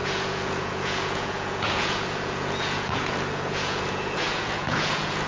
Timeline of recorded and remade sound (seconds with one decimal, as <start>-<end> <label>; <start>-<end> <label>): 0.0-5.3 remade